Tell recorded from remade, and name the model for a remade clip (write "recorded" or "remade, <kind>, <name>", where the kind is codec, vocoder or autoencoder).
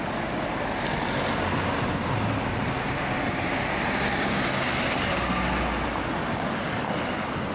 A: recorded